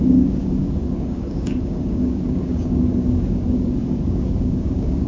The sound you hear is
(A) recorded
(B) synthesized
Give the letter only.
B